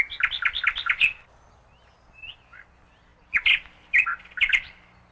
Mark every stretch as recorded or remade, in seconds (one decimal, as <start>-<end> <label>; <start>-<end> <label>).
0.0-5.1 recorded

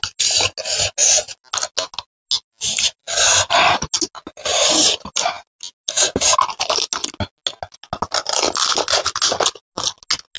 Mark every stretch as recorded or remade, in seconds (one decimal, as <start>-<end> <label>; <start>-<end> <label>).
0.0-10.4 recorded

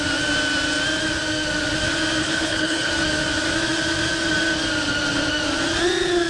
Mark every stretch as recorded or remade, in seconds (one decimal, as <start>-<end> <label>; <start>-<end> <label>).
0.0-2.2 recorded; 2.2-2.9 remade; 2.9-6.3 recorded

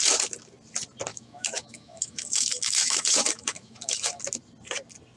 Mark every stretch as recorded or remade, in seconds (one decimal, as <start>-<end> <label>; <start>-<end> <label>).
0.0-1.1 recorded; 1.1-4.2 remade; 4.2-5.2 recorded